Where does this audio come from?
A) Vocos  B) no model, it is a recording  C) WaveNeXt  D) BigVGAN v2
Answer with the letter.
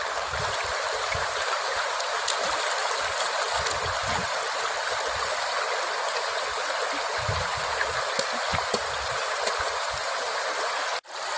B